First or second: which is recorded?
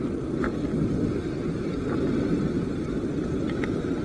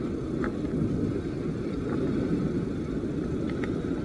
first